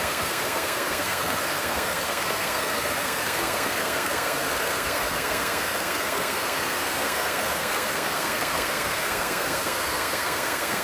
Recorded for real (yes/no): no